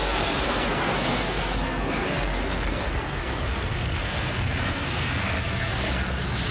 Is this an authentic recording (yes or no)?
no